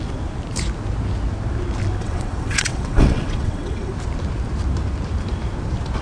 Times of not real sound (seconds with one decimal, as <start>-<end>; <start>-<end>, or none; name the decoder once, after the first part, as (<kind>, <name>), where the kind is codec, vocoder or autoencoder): 2.0-3.9 (vocoder, WaveNeXt)